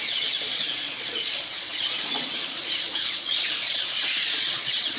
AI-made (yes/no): yes